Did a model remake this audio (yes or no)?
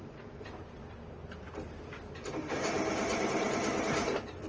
yes